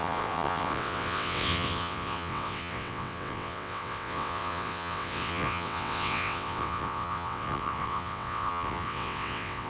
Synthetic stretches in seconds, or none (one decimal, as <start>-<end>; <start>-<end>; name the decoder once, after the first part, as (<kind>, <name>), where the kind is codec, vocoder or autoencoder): 0.0-9.7 (vocoder, WaveNeXt)